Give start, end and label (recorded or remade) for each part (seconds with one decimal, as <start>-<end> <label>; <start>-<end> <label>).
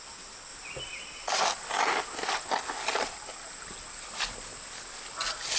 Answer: 0.0-5.6 recorded